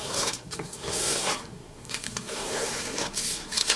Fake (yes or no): yes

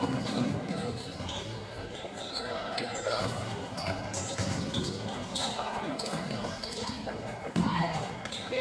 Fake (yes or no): yes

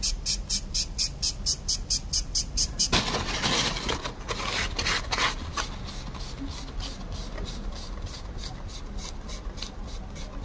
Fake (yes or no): no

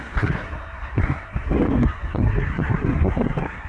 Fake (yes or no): yes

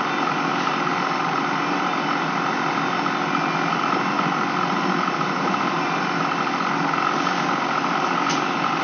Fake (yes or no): no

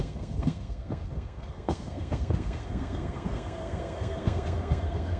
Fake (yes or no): yes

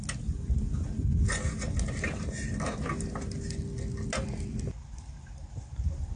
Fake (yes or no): no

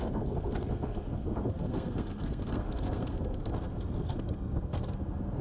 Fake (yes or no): yes